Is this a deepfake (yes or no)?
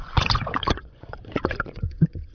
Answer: yes